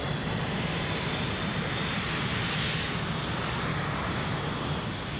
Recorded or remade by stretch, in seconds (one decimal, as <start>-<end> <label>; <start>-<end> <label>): 0.0-3.7 recorded; 3.7-4.3 remade; 4.3-5.2 recorded